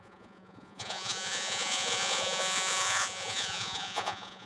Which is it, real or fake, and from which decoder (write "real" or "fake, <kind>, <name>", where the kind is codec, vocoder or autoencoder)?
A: fake, vocoder, Vocos